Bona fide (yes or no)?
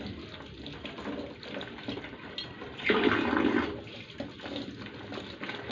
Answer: yes